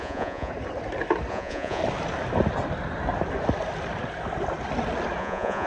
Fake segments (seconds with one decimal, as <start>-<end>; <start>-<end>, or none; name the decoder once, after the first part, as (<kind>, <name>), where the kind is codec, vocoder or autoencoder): 0.0-0.5 (vocoder, Vocos); 1.3-1.8; 5.2-5.7